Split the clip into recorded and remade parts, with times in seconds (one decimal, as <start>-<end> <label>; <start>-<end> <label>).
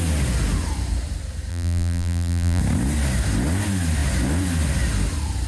0.0-1.5 recorded; 1.5-2.6 remade; 2.6-5.5 recorded